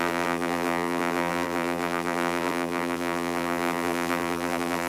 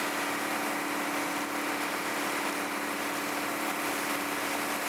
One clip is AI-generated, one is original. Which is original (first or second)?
second